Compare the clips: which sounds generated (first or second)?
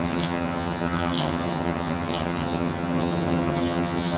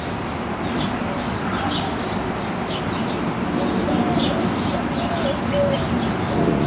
first